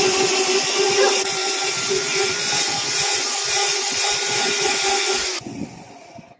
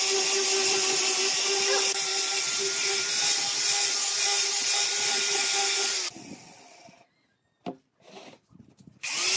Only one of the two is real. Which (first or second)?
second